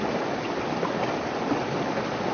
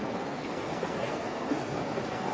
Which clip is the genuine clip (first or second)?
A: first